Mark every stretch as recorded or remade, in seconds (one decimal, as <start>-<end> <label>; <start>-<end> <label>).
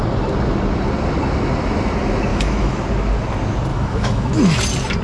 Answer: 0.0-2.3 recorded; 2.3-2.8 remade; 2.8-3.7 recorded; 3.7-4.6 remade; 4.6-5.0 recorded